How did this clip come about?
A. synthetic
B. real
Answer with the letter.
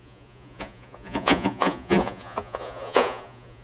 A